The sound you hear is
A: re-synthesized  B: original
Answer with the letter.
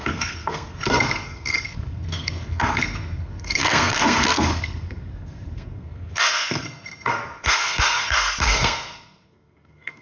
A